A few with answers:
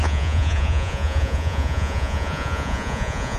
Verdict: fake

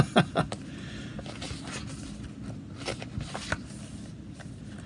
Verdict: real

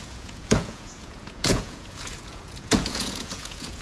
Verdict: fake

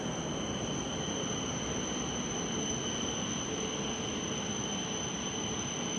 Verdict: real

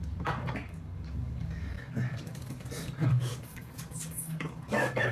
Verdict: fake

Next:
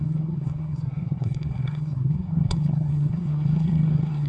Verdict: fake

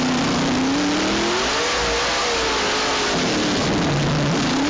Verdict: real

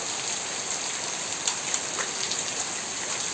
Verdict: real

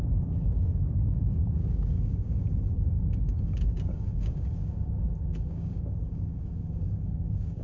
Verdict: fake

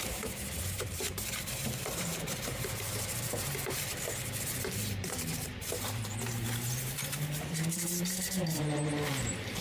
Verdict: fake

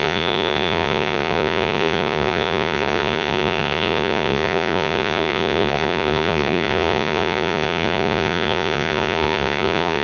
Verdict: fake